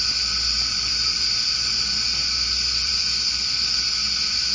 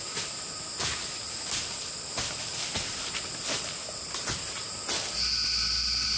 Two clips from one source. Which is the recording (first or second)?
second